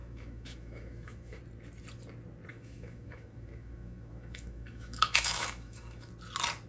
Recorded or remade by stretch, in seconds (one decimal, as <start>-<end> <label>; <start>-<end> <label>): 0.0-1.4 remade; 1.4-2.5 recorded; 2.5-6.1 remade; 6.1-6.7 recorded